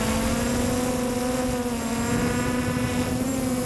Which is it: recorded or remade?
recorded